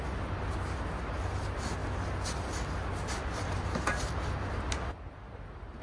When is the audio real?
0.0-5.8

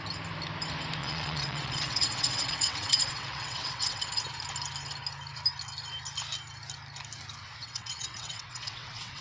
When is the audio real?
0.0-1.0; 4.2-7.6

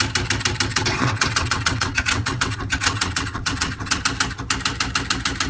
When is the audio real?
0.0-0.7; 4.0-5.5

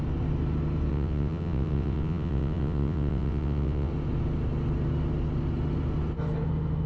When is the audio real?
0.0-0.9; 3.9-6.9